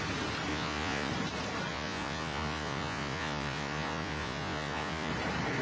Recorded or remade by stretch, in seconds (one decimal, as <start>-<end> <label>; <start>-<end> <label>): 0.0-0.5 recorded; 0.5-1.1 remade; 1.1-1.7 recorded; 1.7-5.1 remade; 5.1-5.6 recorded